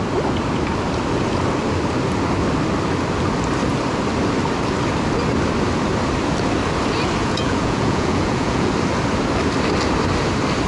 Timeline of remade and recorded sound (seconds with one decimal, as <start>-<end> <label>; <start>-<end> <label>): 0.0-7.2 recorded; 7.2-8.7 remade; 8.7-10.7 recorded